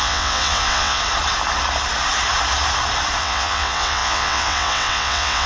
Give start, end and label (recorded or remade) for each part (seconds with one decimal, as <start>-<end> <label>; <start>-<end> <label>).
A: 0.0-1.0 remade; 1.0-3.2 recorded; 3.2-5.5 remade